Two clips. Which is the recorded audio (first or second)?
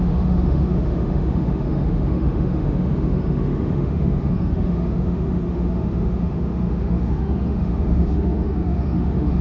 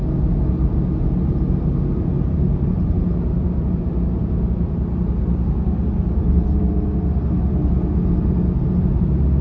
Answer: second